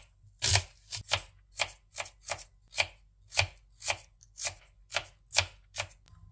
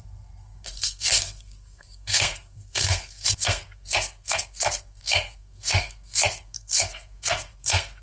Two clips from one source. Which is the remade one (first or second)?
second